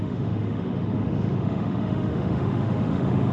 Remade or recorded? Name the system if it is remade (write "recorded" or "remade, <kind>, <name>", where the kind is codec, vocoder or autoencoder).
remade, autoencoder, DAC-VAE